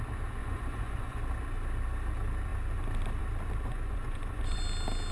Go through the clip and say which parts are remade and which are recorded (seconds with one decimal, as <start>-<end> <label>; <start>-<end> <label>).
0.0-0.4 recorded; 0.4-1.2 remade; 1.2-3.7 recorded; 3.7-4.6 remade; 4.6-5.1 recorded